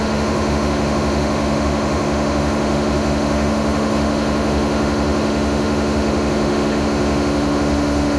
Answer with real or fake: fake